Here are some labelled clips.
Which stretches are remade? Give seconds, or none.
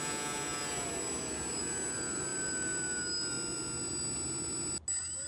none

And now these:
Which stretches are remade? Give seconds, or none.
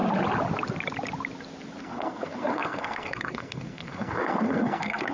1.8-5.1 (codec, SNAC)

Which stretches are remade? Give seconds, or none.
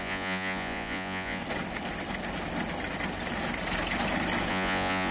0.0-1.4 (vocoder, Vocos); 4.5-5.1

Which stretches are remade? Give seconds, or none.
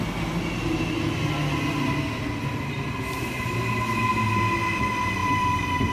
5.2-5.9 (vocoder, BigVGAN v2)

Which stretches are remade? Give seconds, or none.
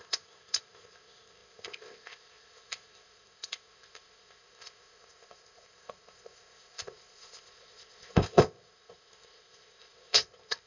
0.0-10.7 (codec, ZipCodec)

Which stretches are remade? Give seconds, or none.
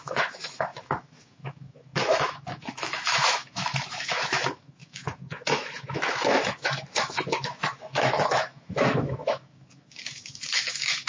0.0-11.1 (autoencoder, DAC-VAE)